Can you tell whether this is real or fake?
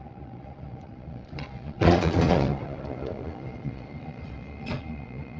fake